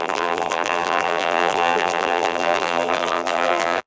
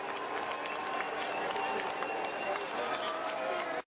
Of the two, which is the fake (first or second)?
first